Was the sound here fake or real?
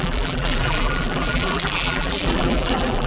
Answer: fake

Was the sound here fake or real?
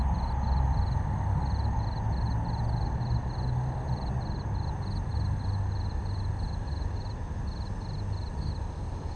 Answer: real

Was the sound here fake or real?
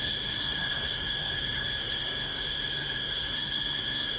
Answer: fake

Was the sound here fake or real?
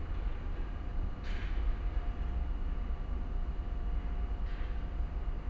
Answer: real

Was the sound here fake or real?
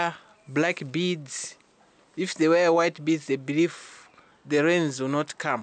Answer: real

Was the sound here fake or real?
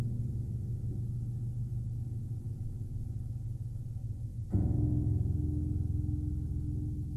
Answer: real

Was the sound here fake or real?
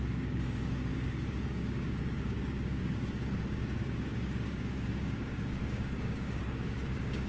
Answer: fake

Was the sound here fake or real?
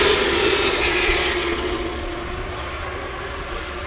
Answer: fake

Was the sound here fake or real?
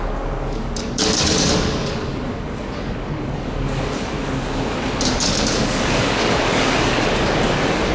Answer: fake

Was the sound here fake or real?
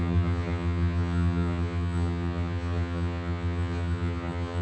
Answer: fake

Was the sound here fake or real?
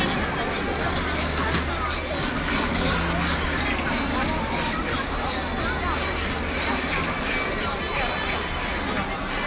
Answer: real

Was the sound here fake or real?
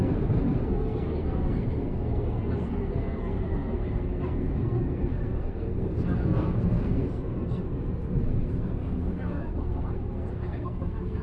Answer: fake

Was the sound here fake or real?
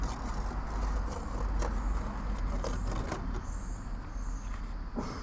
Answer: real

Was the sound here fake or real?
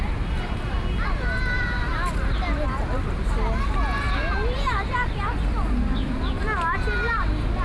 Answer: real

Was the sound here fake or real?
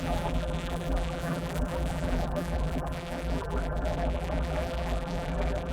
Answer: fake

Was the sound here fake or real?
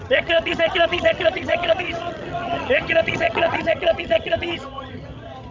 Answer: fake